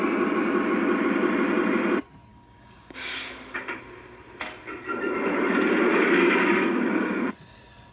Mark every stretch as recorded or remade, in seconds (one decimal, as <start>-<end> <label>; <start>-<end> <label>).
0.0-2.3 recorded; 2.3-3.8 remade; 3.8-5.9 recorded; 5.9-7.2 remade; 7.2-7.9 recorded